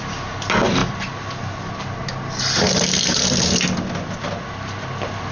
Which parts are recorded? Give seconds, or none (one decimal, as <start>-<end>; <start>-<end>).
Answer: 0.0-5.3